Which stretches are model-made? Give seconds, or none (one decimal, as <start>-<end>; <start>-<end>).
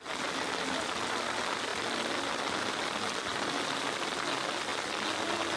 none